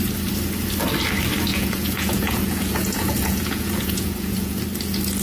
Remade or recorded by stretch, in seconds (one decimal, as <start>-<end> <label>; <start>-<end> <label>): 0.0-1.5 recorded; 1.5-4.6 remade; 4.6-5.2 recorded